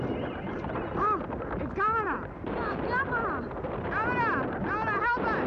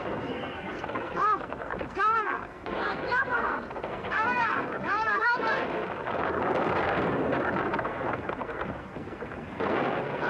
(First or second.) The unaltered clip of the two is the first